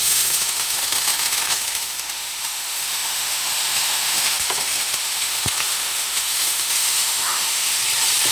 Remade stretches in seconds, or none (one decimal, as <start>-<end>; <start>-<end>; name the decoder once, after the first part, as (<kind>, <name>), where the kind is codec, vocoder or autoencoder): 0.0-7.8 (autoencoder, DAC-VAE)

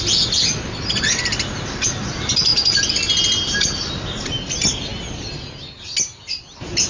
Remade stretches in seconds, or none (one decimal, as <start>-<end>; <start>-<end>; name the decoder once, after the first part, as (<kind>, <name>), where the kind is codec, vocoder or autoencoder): none

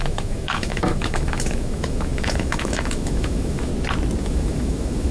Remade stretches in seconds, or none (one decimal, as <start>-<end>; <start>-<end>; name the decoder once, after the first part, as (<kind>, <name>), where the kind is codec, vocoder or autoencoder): 0.0-3.7 (autoencoder, DAC-VAE); 4.2-5.1

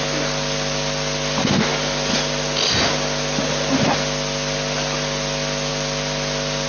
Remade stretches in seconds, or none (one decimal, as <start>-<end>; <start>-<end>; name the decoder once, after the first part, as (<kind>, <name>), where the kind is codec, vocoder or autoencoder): none

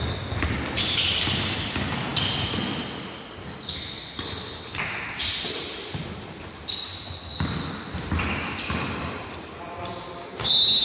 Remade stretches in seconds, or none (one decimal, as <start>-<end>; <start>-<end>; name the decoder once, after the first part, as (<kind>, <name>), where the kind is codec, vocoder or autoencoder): none

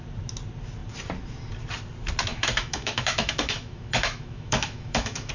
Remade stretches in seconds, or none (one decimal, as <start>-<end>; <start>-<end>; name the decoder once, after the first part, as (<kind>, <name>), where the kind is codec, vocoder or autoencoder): 2.3-5.3 (autoencoder, DAC-VAE)

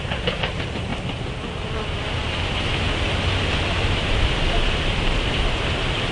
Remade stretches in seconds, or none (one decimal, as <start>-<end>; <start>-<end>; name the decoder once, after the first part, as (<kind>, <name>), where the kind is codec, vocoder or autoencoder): none